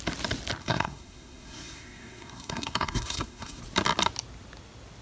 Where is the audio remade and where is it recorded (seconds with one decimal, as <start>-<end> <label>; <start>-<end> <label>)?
0.0-0.6 recorded; 0.6-3.6 remade; 3.6-5.0 recorded